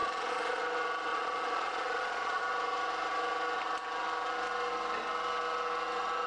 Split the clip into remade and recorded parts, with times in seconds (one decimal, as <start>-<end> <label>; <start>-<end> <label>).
0.0-0.6 remade; 0.6-1.1 recorded; 1.1-2.4 remade; 2.4-6.3 recorded